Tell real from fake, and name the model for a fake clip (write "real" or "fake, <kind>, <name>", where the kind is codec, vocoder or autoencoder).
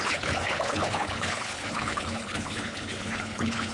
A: fake, codec, HILCodec